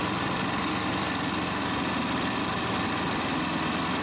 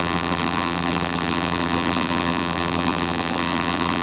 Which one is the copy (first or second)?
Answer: second